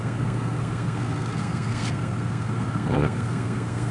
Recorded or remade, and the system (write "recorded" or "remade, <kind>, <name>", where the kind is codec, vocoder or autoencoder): remade, codec, SNAC